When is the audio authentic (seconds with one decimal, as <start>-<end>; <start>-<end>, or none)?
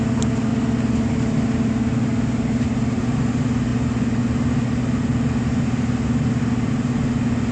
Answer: 0.0-7.5